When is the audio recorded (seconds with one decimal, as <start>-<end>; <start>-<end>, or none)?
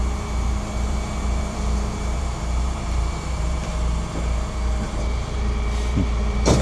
3.7-4.9